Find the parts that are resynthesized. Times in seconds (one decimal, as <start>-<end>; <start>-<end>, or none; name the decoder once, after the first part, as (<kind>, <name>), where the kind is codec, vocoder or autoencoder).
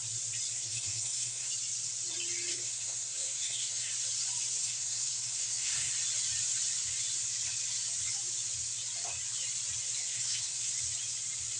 0.5-1.5 (codec, SNAC); 2.5-3.9; 4.6-5.9; 10.0-10.7